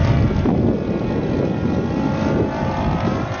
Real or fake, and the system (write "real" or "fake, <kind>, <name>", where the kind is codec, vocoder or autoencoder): fake, vocoder, BigVGAN v2